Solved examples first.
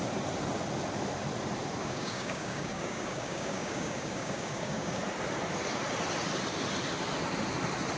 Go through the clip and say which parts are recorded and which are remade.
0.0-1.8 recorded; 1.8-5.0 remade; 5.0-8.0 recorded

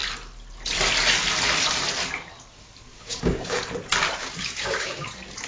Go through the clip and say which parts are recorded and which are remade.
0.0-2.9 recorded; 2.9-3.6 remade; 3.6-4.2 recorded; 4.2-5.1 remade; 5.1-5.5 recorded

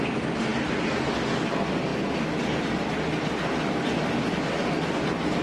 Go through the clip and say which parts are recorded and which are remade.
0.0-5.4 recorded

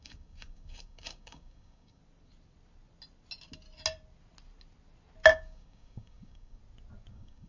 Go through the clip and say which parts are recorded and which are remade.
0.0-2.0 remade; 2.0-5.3 recorded; 5.3-6.6 remade; 6.6-7.1 recorded; 7.1-7.5 remade

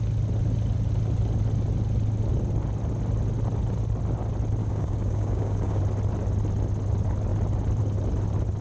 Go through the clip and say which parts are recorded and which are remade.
0.0-4.6 recorded; 4.6-5.8 remade; 5.8-8.6 recorded

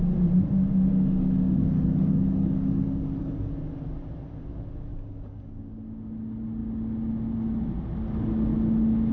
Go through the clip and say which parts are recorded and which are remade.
0.0-1.6 recorded; 1.6-3.5 remade; 3.5-4.9 recorded; 4.9-5.6 remade; 5.6-9.1 recorded